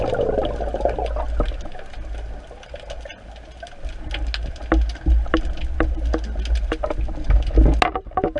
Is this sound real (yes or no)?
yes